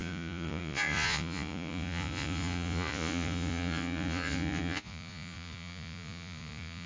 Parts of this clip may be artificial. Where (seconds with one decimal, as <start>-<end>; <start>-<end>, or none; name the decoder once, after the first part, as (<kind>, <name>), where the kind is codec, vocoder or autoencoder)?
0.0-6.9 (vocoder, Vocos)